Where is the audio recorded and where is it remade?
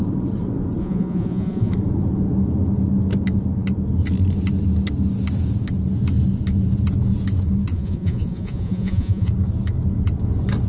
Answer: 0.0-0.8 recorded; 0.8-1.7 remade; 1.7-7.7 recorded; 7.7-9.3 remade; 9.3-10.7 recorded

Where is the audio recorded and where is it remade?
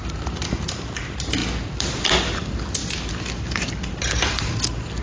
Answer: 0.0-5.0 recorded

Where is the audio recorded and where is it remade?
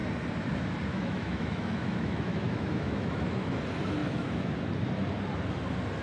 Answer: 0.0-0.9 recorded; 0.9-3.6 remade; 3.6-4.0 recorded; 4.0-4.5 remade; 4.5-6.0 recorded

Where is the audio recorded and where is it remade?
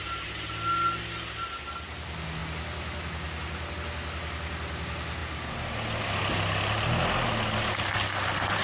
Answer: 0.0-8.6 recorded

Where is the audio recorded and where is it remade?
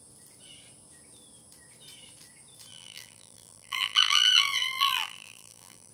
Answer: 0.0-2.7 recorded; 2.7-5.9 remade